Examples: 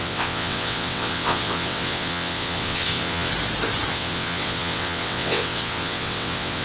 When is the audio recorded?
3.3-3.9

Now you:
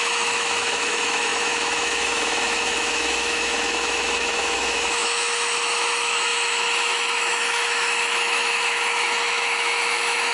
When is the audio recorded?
none

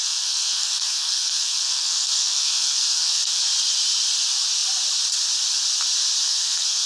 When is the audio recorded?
3.4-6.2

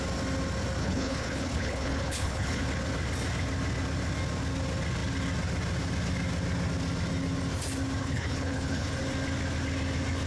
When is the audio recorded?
0.0-0.8; 2.6-8.0; 8.9-10.3

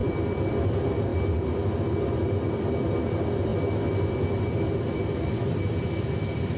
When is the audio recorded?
1.1-3.0; 3.5-4.1

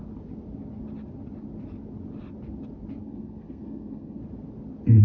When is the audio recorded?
0.0-3.0; 4.2-5.0

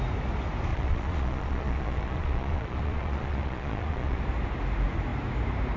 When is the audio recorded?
0.0-0.7; 4.2-5.8